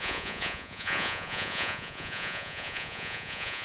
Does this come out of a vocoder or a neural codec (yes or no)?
yes